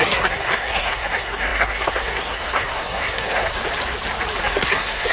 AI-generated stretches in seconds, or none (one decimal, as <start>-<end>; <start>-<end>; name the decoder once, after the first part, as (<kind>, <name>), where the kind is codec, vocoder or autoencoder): 0.0-3.6 (codec, SNAC); 4.4-5.1